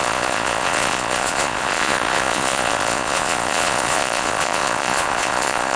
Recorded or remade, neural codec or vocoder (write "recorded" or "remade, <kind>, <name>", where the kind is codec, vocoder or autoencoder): remade, vocoder, Vocos